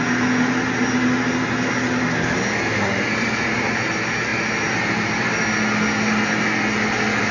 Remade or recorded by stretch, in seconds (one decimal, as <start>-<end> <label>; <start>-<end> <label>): 0.0-7.3 recorded